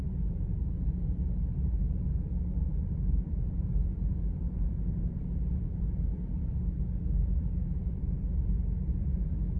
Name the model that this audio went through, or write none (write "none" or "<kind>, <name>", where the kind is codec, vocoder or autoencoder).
vocoder, BigVGAN v2